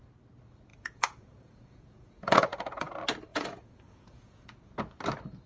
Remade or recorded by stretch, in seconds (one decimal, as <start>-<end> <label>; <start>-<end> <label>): 0.0-0.7 recorded; 0.7-2.9 remade; 2.9-3.3 recorded; 3.3-4.7 remade; 4.7-5.5 recorded

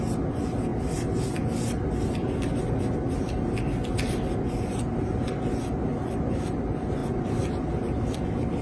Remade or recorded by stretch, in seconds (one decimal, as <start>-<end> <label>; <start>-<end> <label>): 0.0-8.6 recorded

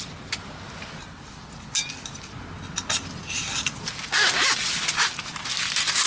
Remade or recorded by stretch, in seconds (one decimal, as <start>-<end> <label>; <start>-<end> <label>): 0.0-6.1 recorded

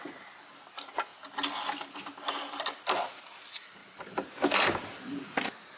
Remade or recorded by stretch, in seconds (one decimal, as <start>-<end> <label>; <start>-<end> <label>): 0.0-3.8 recorded; 3.8-5.8 remade

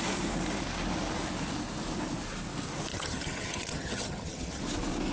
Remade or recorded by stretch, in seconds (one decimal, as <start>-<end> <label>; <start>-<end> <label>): 0.0-2.9 recorded; 2.9-4.6 remade; 4.6-5.1 recorded

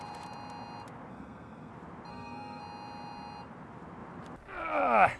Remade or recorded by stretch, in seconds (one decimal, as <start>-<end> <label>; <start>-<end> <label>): 0.0-1.1 recorded; 1.1-1.7 remade; 1.7-2.1 recorded; 2.1-2.6 remade; 2.6-5.2 recorded